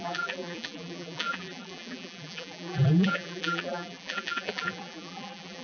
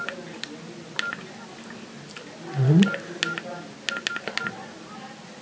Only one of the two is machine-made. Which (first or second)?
first